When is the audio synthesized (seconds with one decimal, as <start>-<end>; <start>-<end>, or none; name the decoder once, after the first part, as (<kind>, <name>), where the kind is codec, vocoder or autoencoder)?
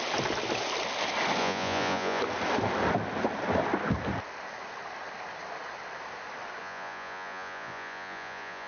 1.4-2.2 (vocoder, Vocos); 6.6-8.7